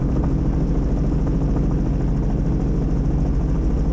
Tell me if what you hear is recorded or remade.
recorded